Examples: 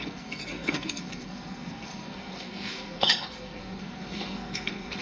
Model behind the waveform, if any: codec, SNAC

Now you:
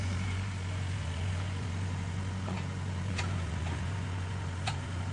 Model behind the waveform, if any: vocoder, Vocos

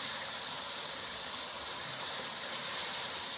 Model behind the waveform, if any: vocoder, BigVGAN v2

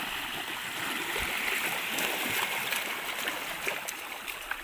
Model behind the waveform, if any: none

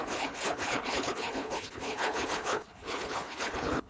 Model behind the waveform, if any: codec, HILCodec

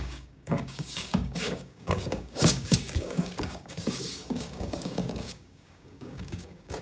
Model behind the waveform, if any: codec, DAC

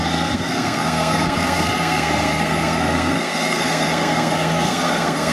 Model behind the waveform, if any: codec, SNAC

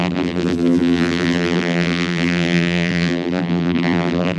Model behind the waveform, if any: vocoder, BigVGAN v2